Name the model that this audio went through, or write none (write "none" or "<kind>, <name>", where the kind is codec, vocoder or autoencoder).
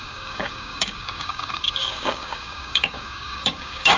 codec, DAC